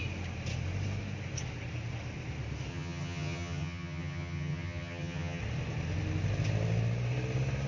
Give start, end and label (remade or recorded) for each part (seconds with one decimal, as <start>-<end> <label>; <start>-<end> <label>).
0.0-2.7 recorded; 2.7-5.4 remade; 5.4-7.7 recorded